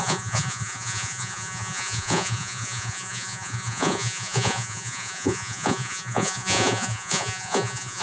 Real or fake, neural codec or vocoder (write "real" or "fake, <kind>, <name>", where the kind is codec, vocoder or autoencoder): fake, vocoder, Vocos